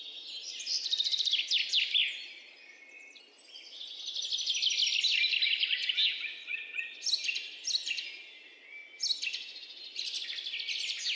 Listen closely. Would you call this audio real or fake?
real